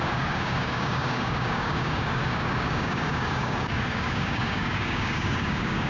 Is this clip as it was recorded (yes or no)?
no